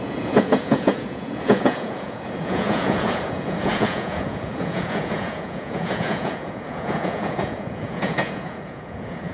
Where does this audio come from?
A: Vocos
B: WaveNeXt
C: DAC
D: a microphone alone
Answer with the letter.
A